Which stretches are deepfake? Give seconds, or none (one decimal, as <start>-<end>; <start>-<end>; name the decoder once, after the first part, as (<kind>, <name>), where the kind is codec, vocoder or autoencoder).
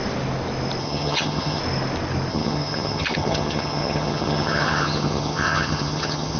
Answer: 0.8-1.6 (vocoder, HiFi-GAN); 2.3-6.4